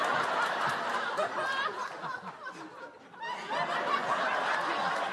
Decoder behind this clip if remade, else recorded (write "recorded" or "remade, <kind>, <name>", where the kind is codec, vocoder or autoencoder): recorded